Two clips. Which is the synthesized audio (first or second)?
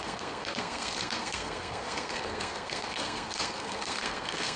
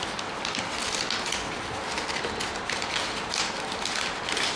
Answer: first